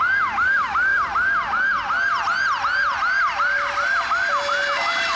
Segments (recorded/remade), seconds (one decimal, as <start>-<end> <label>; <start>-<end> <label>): 0.0-5.2 recorded